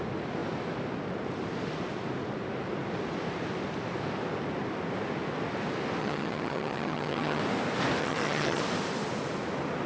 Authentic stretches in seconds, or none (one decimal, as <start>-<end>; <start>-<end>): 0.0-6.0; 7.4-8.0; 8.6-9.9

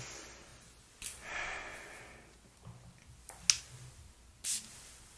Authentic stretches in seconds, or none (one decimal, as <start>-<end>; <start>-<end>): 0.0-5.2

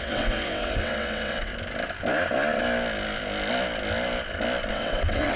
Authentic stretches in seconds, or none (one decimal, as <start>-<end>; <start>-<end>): 1.5-4.7

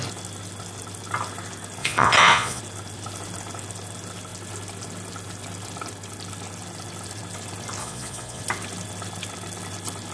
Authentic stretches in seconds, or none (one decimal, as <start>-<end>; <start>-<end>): 0.0-1.8; 2.6-7.8; 8.4-10.1